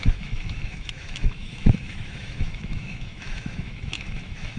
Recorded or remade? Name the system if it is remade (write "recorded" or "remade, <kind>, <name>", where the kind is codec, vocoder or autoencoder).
remade, autoencoder, DAC-VAE